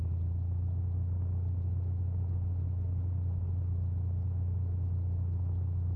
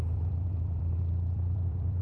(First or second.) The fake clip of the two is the second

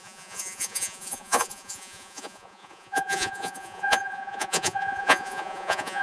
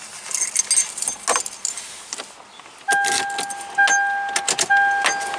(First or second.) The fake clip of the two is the first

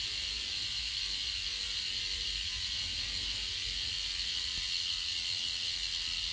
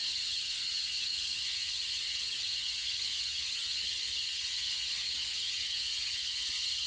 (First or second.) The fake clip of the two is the second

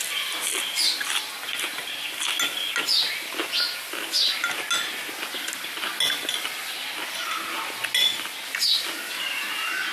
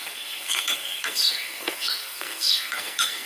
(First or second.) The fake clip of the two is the second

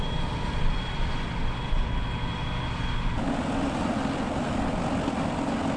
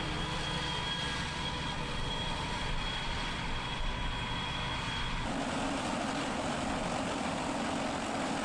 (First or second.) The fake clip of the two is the second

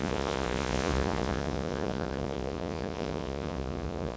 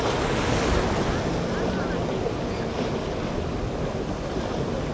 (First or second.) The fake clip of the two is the first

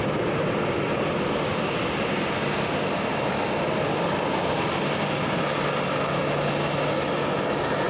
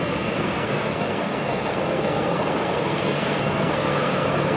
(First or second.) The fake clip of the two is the second